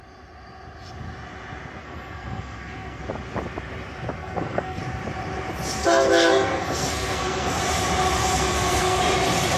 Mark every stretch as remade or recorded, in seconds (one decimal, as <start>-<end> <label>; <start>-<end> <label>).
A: 0.0-1.8 recorded; 1.8-3.0 remade; 3.0-4.2 recorded; 4.2-4.8 remade; 4.8-5.8 recorded; 5.8-7.6 remade; 7.6-8.2 recorded; 8.2-9.0 remade; 9.0-9.6 recorded